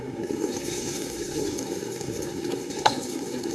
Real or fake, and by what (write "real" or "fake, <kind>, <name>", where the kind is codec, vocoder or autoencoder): fake, codec, SNAC